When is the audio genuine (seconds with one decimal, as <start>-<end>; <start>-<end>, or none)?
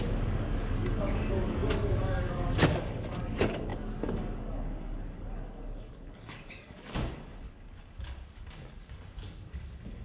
none